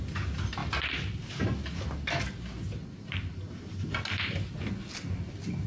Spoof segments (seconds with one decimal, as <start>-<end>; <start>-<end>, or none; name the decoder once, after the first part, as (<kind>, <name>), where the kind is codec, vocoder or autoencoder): none